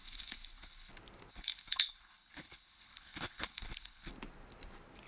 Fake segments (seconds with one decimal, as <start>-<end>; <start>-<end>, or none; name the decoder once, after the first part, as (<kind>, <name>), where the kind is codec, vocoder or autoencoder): 0.0-0.9 (codec, HILCodec); 1.3-4.1